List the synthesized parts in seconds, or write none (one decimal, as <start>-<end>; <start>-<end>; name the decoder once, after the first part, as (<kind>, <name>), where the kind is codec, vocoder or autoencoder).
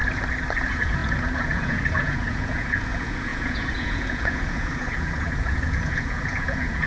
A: 0.6-6.9 (vocoder, Vocos)